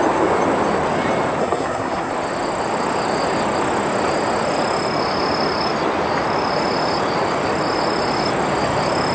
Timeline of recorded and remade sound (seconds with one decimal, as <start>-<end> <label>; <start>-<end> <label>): 0.0-1.4 recorded; 1.4-2.1 remade; 2.1-9.1 recorded